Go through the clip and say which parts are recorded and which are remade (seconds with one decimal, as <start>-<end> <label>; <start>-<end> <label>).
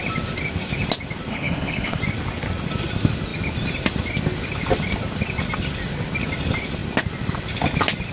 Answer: 0.0-1.3 recorded; 1.3-2.0 remade; 2.0-8.1 recorded